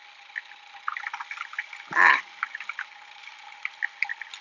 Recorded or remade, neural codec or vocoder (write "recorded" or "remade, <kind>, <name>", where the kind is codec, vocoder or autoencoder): recorded